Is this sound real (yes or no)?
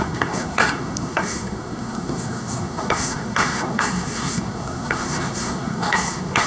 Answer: no